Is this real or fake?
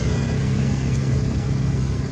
fake